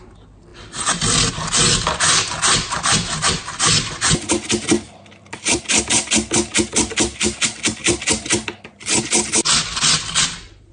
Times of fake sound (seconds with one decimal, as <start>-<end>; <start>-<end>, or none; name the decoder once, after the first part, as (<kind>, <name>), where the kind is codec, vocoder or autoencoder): none